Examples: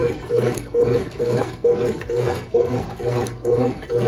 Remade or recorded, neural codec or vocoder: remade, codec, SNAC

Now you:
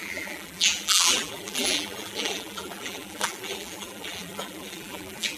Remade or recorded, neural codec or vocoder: remade, vocoder, BigVGAN v2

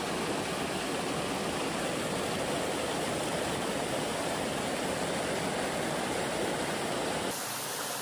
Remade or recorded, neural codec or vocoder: recorded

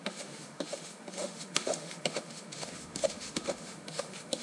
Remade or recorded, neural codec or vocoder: remade, autoencoder, DAC-VAE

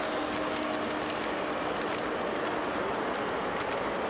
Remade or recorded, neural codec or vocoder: recorded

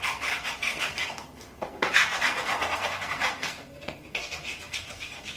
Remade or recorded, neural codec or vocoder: remade, codec, SNAC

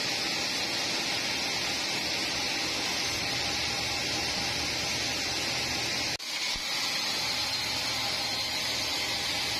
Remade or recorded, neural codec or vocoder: recorded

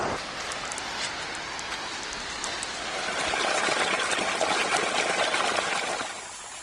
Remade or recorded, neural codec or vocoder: recorded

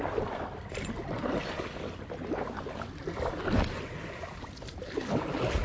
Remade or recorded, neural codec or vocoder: recorded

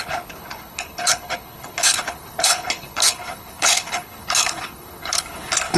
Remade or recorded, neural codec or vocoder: remade, codec, HILCodec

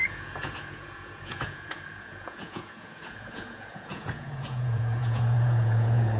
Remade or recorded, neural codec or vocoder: remade, vocoder, Vocos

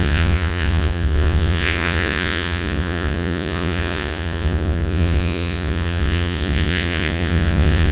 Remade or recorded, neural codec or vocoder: remade, vocoder, Vocos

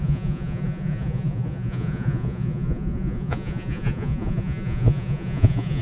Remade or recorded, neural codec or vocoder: remade, vocoder, Vocos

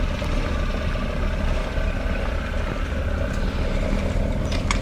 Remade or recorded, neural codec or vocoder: recorded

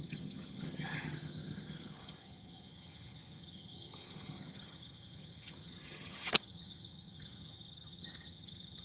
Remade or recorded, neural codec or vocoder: remade, vocoder, HiFi-GAN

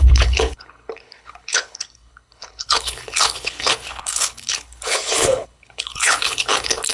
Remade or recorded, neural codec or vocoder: remade, codec, HILCodec